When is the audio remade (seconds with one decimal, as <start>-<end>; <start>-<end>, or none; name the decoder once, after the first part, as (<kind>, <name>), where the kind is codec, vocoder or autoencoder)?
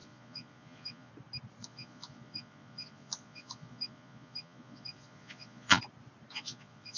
0.0-1.1 (vocoder, Vocos); 1.6-5.8; 6.3-7.0